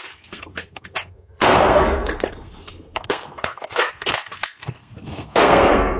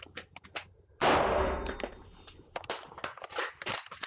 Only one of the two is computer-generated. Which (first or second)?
first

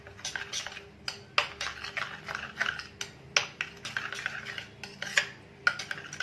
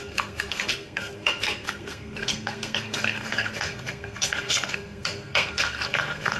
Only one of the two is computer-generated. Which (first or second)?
second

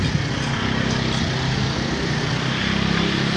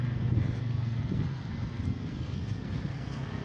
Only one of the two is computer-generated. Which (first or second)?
second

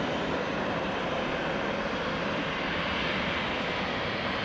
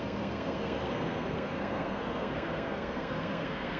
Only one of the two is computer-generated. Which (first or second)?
second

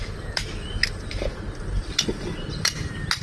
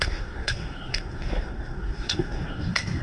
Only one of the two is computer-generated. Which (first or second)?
second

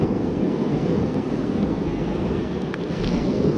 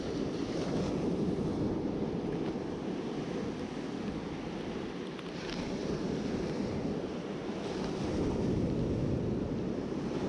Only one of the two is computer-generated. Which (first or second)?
first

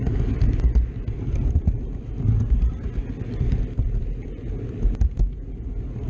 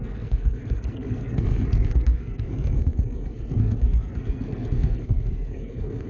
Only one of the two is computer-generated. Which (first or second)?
second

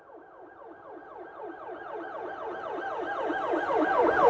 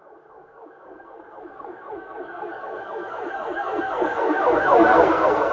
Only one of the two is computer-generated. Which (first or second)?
second